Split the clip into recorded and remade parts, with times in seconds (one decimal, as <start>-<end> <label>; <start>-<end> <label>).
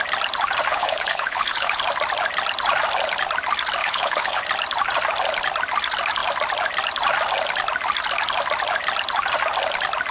0.0-0.7 recorded; 0.7-1.8 remade; 1.8-3.8 recorded; 3.8-4.4 remade; 4.4-10.1 recorded